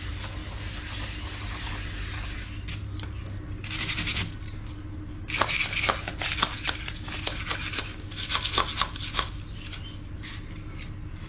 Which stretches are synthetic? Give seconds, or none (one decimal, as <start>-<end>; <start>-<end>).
none